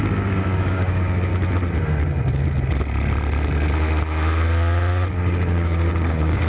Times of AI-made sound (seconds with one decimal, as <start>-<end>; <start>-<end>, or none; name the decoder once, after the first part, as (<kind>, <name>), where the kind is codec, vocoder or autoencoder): 0.0-1.3 (codec, DAC); 5.1-6.5